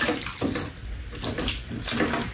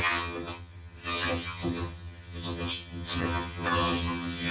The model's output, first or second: second